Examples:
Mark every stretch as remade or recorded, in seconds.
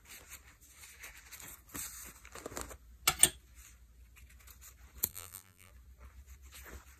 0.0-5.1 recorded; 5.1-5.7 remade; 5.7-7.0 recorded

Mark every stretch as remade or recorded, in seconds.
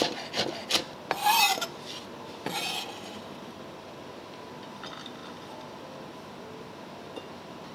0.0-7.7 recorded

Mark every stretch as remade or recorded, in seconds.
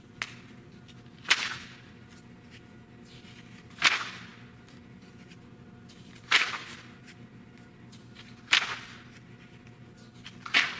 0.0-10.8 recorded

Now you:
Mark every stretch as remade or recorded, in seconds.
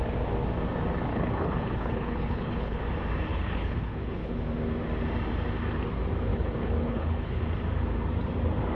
0.0-1.1 recorded; 1.1-2.8 remade; 2.8-3.3 recorded; 3.3-4.4 remade; 4.4-6.3 recorded; 6.3-7.4 remade; 7.4-8.7 recorded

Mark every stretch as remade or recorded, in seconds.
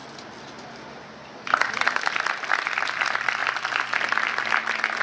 0.0-5.0 recorded